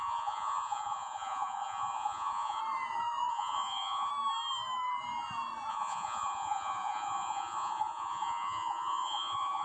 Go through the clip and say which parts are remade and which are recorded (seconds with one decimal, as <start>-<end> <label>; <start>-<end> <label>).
0.0-2.6 remade; 2.6-3.3 recorded; 3.3-4.1 remade; 4.1-5.7 recorded; 5.7-9.6 remade